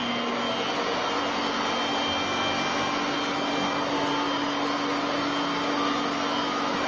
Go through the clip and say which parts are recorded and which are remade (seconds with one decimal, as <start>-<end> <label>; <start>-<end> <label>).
0.0-6.9 recorded